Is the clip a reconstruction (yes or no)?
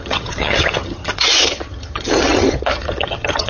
yes